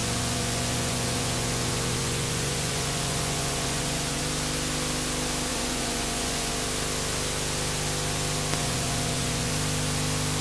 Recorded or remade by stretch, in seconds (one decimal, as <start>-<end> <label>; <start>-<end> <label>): 0.0-4.2 remade; 4.2-5.5 recorded; 5.5-6.5 remade; 6.5-8.6 recorded; 8.6-9.5 remade; 9.5-10.4 recorded